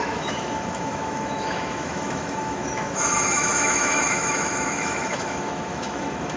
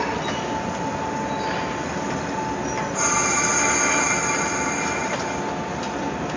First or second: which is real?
second